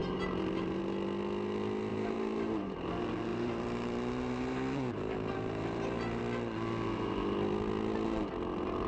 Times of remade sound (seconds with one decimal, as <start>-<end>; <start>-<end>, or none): 0.0-0.8; 1.9-2.9; 3.3-6.2